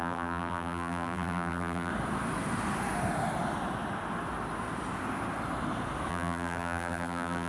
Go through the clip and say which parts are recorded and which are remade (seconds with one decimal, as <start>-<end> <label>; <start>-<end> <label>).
0.0-1.9 remade; 1.9-6.1 recorded; 6.1-7.5 remade